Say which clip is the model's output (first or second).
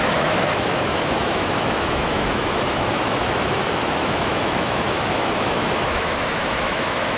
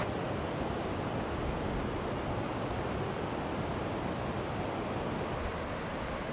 first